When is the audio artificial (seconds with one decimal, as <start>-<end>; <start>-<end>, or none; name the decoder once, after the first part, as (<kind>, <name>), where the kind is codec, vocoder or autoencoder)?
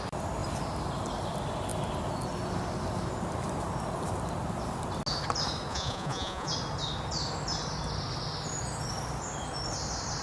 5.7-6.5 (vocoder, Vocos)